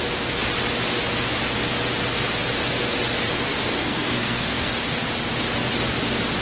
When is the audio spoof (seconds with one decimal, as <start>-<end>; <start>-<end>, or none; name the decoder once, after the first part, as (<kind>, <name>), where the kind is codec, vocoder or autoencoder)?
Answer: 3.8-4.7 (codec, SNAC)